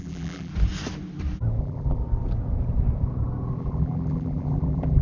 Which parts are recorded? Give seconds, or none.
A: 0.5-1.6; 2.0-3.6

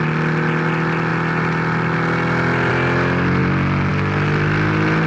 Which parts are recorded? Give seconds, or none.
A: 0.0-5.1

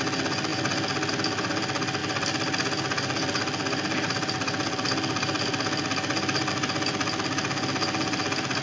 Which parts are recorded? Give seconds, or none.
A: 0.0-8.6

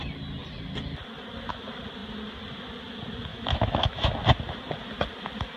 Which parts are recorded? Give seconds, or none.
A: 0.0-3.3; 4.1-5.6

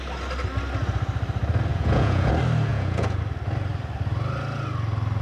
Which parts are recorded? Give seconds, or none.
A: 0.0-1.7; 2.3-2.7; 3.2-5.2